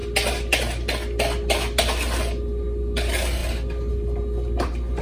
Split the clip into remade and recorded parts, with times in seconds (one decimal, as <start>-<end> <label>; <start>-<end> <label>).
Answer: 0.0-5.0 recorded